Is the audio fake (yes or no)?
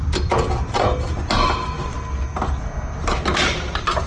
no